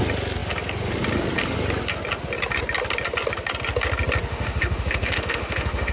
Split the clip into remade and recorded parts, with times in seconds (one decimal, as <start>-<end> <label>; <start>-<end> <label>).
0.0-4.3 recorded; 4.3-5.9 remade

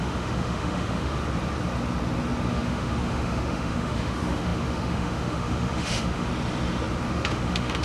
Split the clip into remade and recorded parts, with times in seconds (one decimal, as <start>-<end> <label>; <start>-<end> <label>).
0.0-1.2 remade; 1.2-2.5 recorded; 2.5-6.3 remade; 6.3-7.1 recorded; 7.1-7.8 remade

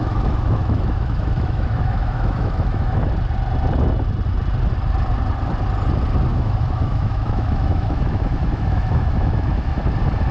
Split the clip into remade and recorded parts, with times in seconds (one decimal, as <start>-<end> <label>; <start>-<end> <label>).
0.0-3.1 remade; 3.1-6.3 recorded; 6.3-9.8 remade; 9.8-10.3 recorded

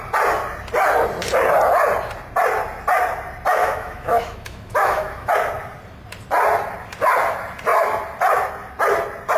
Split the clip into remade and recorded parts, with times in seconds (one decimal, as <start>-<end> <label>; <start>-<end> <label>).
0.0-3.6 recorded; 3.6-5.3 remade; 5.3-9.4 recorded

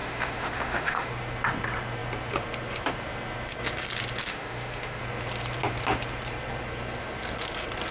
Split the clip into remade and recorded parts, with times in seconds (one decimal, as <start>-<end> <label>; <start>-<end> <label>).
0.0-1.1 remade; 1.1-4.3 recorded; 4.3-5.0 remade; 5.0-7.9 recorded

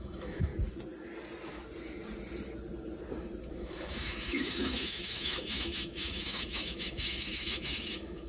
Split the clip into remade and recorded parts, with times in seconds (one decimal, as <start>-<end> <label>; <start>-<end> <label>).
0.0-0.5 remade; 0.5-3.6 recorded; 3.6-8.3 remade